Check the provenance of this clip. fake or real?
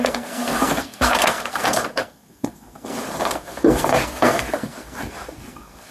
fake